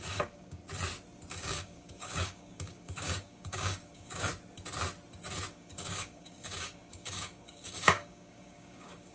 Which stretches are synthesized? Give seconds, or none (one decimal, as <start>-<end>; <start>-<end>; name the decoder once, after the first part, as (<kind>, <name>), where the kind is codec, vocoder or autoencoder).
0.0-0.6 (codec, DAC); 1.3-4.3; 5.5-9.1